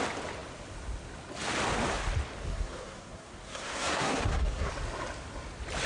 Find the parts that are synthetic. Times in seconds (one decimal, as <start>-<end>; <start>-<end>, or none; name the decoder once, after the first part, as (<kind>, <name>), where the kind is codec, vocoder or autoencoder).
2.5-4.7 (codec, SNAC)